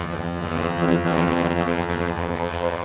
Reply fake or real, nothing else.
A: fake